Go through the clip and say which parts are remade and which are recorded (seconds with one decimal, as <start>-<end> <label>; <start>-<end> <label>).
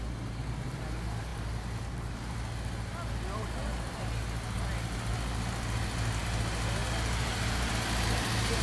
0.0-6.8 recorded; 6.8-7.7 remade; 7.7-8.6 recorded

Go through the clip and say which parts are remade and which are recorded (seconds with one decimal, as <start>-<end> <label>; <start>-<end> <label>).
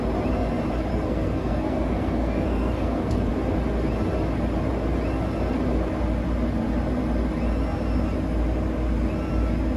0.0-0.9 recorded; 0.9-3.3 remade; 3.3-9.8 recorded